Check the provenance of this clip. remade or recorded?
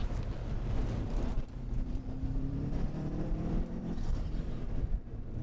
remade